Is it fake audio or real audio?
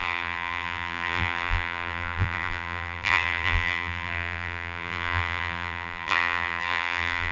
fake